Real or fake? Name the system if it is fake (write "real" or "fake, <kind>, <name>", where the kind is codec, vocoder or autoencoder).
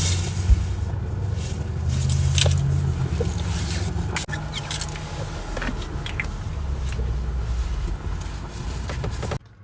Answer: real